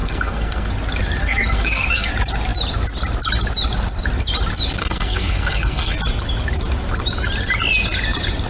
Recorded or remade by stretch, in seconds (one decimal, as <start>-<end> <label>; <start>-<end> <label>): 0.0-0.7 remade; 0.7-1.2 recorded; 1.2-2.1 remade; 2.1-4.8 recorded; 4.8-5.9 remade; 5.9-8.5 recorded